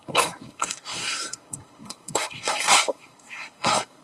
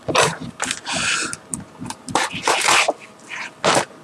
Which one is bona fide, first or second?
second